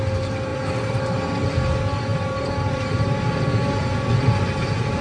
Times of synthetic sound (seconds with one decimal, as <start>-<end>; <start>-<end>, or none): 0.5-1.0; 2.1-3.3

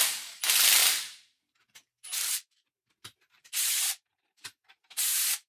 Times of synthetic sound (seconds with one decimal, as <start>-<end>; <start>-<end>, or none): 0.0-5.5

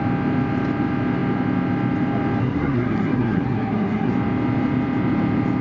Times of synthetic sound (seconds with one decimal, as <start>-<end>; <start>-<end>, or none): 2.4-4.1

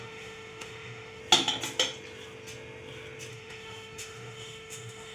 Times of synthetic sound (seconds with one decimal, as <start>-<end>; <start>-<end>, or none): 0.0-1.2; 3.3-5.1

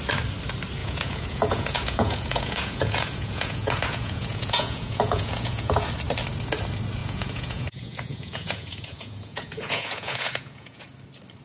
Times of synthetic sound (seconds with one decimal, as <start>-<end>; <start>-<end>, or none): 0.8-5.9; 7.0-10.8